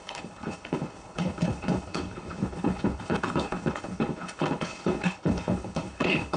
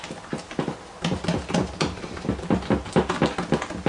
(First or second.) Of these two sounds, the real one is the second